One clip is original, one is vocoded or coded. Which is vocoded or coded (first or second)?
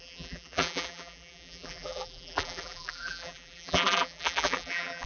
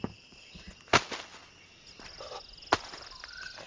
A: first